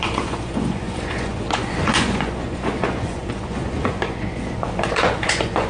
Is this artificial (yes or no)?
yes